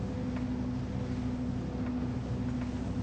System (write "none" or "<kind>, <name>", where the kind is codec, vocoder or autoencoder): none